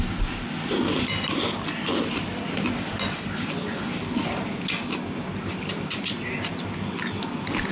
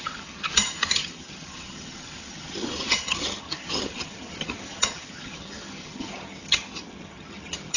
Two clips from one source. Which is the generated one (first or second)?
second